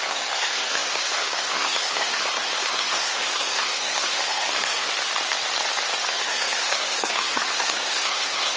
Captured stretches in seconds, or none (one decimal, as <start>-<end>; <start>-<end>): 4.9-6.1